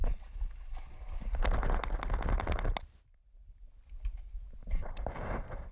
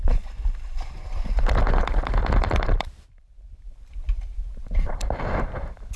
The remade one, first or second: second